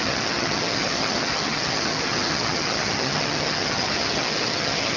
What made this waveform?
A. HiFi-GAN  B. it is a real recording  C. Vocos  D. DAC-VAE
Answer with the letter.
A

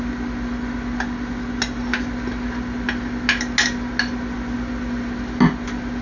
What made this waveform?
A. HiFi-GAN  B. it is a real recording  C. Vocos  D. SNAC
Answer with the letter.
B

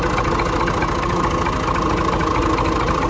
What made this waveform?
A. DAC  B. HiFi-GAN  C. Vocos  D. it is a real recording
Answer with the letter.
D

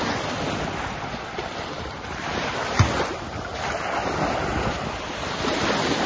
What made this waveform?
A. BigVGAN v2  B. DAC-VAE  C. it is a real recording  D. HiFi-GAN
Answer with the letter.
C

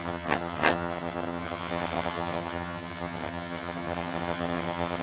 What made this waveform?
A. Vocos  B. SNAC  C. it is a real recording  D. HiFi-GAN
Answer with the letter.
D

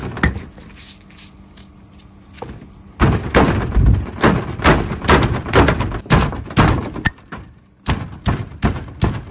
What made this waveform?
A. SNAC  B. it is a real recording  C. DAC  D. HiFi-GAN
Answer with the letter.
B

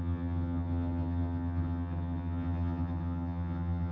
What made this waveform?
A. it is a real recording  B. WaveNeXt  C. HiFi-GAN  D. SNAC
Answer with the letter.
C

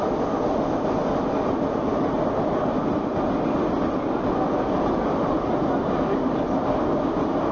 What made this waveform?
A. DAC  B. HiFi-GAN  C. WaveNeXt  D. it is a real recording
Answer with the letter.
D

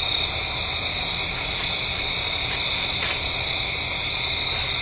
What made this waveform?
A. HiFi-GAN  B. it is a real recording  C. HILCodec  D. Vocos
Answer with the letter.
B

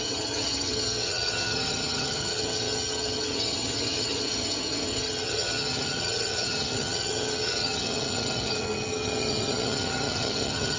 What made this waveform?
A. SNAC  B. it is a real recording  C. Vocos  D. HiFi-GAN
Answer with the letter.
D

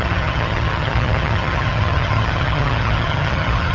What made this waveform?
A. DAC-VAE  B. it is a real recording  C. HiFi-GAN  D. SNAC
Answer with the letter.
C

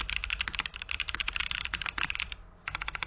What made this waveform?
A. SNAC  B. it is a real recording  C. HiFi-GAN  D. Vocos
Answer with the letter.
B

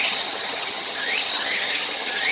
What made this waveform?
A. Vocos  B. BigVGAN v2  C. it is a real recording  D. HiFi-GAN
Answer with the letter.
D